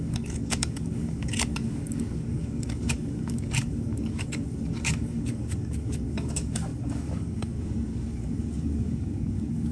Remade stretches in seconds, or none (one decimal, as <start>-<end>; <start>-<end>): 0.0-9.7